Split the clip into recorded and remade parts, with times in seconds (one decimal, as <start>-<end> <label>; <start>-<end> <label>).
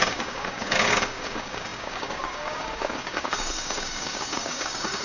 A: 0.0-5.0 remade